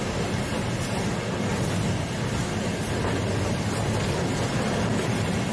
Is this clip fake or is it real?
real